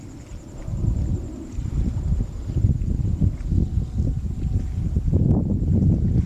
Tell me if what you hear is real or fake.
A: real